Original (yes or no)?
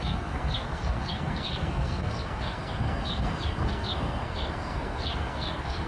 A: no